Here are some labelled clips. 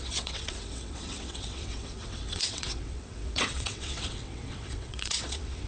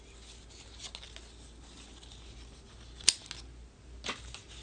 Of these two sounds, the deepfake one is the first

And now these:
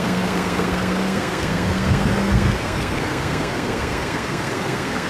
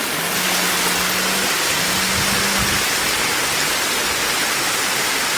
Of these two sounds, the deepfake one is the first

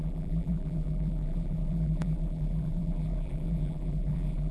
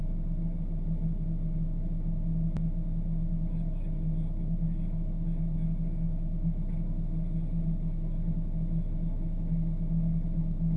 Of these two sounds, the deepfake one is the first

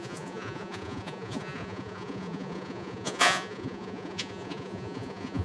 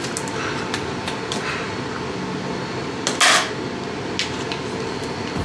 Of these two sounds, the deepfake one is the first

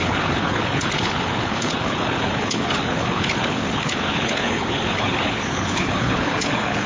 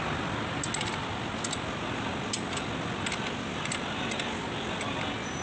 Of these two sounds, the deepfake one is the first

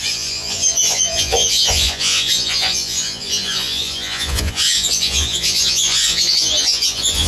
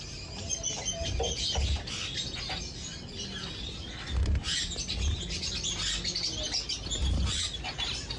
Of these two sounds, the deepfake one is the first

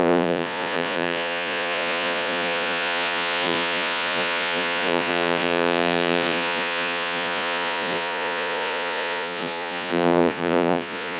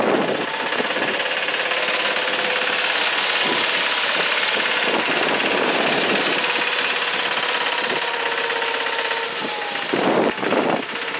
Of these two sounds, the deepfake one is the first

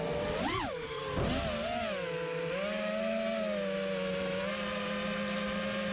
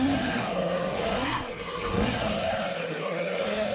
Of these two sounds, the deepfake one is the second